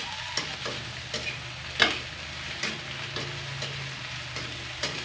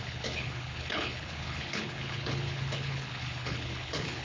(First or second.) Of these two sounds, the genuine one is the first